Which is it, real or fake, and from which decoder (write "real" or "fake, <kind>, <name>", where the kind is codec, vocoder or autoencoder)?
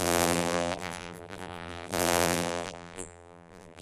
fake, vocoder, BigVGAN v2